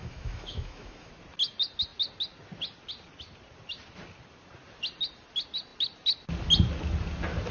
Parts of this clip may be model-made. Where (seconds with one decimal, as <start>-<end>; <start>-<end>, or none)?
0.0-1.1